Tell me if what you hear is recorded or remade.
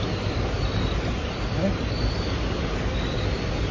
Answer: recorded